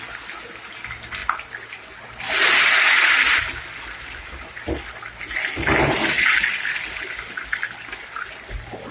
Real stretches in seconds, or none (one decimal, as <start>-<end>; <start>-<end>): 0.0-8.9